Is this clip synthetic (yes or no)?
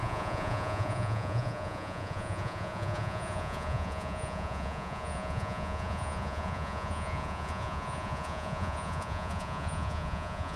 yes